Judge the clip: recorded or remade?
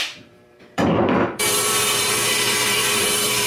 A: remade